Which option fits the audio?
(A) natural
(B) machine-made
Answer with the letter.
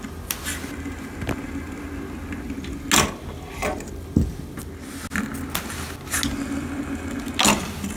A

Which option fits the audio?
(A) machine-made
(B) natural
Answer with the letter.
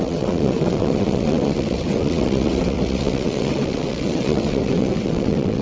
A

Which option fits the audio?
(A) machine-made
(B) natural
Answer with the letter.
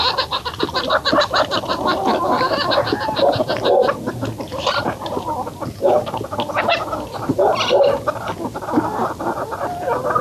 B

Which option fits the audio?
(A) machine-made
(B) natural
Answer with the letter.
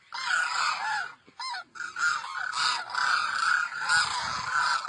B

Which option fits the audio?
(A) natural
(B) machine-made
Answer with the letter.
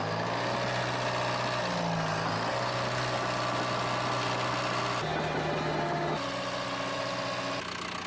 A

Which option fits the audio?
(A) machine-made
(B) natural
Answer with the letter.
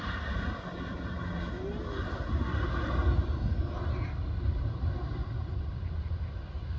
B